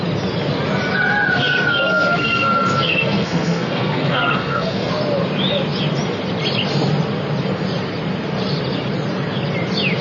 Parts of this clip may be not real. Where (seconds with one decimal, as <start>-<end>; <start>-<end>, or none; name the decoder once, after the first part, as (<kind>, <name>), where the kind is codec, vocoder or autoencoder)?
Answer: 1.4-4.9 (codec, SNAC)